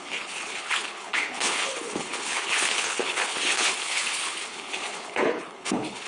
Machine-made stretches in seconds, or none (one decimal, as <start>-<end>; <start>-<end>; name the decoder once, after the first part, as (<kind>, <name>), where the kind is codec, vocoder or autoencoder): 0.0-6.1 (codec, HILCodec)